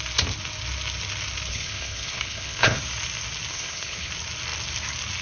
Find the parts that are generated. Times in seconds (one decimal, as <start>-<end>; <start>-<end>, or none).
1.5-2.8; 3.5-4.1